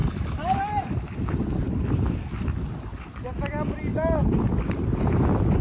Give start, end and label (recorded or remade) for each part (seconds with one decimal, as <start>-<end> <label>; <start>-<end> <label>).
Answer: 0.0-5.6 recorded